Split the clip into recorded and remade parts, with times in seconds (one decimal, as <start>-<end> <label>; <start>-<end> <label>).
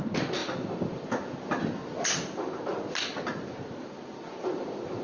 0.0-5.0 recorded